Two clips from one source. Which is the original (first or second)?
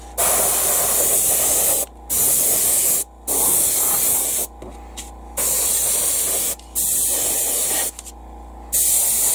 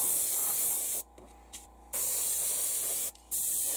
first